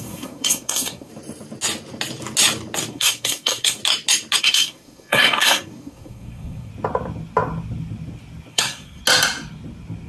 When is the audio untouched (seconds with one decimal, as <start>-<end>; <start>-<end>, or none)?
1.1-2.9; 3.8-4.4; 6.7-8.5; 9.0-10.1